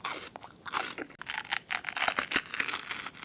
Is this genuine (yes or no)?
yes